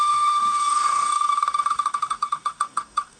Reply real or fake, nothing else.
fake